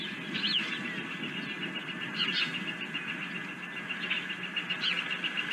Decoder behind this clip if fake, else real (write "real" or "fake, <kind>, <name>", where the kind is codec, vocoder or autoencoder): real